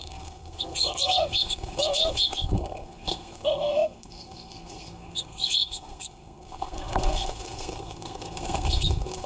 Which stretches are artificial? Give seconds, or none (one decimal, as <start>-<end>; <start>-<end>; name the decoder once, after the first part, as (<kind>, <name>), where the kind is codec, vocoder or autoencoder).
0.0-9.3 (codec, SNAC)